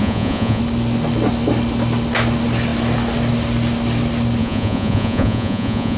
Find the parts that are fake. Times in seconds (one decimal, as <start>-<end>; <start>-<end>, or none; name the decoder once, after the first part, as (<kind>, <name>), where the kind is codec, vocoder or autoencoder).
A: 0.0-0.6 (vocoder, Vocos); 4.4-6.0